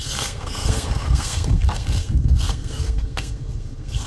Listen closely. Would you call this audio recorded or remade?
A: remade